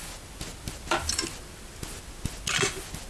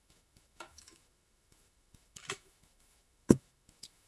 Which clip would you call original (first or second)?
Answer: first